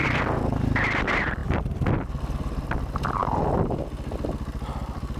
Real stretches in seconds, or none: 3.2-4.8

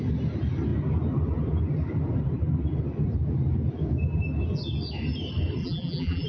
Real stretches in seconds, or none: 0.0-5.6

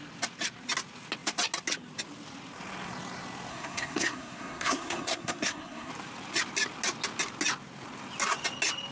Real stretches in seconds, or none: 0.0-3.5; 5.9-8.9

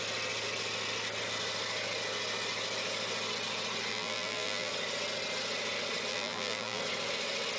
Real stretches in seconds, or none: 0.0-3.9; 4.7-6.1; 6.8-7.6